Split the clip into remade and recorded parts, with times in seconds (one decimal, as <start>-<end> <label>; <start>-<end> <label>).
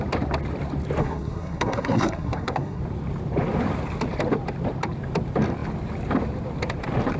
0.0-1.0 recorded; 1.0-2.8 remade; 2.8-7.2 recorded